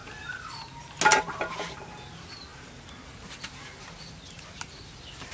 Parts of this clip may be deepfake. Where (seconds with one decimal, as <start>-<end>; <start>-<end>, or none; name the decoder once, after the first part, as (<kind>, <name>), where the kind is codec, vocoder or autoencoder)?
none